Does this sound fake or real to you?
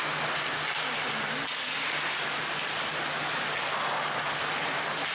real